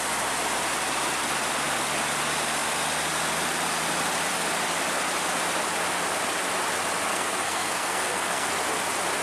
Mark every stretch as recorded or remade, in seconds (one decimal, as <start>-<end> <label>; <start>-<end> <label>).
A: 0.0-7.1 recorded; 7.1-8.5 remade; 8.5-9.2 recorded